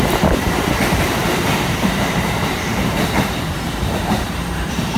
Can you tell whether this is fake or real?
fake